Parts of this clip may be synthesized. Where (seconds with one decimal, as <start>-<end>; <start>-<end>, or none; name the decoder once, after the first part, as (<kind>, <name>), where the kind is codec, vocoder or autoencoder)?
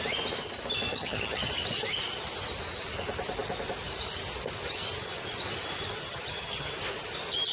0.9-1.5 (vocoder, HiFi-GAN); 6.0-6.7